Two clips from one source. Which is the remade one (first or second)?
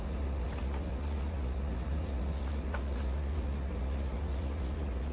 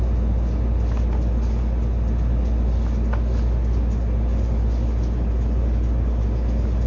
first